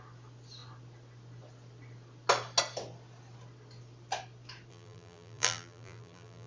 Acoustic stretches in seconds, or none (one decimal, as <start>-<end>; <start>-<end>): 0.0-4.7